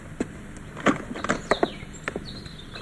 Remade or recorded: recorded